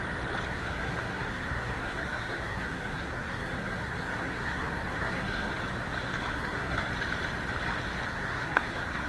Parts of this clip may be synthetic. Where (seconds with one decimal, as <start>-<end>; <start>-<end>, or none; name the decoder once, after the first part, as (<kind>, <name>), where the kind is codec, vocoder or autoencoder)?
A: 0.5-5.5 (codec, SNAC); 6.3-6.9; 8.1-9.1